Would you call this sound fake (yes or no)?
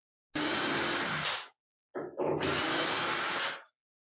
no